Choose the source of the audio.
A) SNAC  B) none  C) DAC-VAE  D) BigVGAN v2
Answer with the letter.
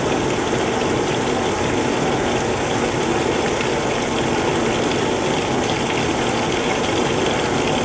B